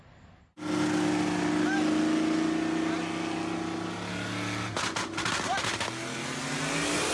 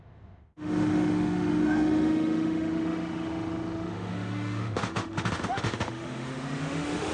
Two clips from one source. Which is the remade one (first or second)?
second